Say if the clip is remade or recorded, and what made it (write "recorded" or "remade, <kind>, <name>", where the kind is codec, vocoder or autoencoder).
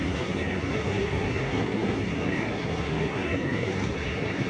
remade, codec, SNAC